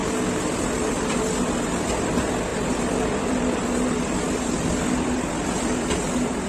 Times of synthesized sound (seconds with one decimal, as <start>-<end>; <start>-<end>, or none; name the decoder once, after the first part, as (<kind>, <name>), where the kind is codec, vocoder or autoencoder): 0.0-1.4 (vocoder, BigVGAN v2); 2.5-6.5